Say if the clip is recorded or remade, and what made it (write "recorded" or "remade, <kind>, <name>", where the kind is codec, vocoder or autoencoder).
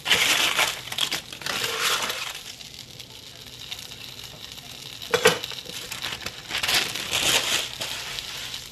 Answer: recorded